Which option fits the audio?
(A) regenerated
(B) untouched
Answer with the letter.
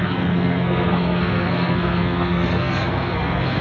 A